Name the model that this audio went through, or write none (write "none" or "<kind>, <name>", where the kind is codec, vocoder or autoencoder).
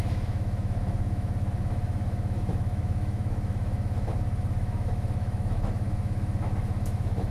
autoencoder, DAC-VAE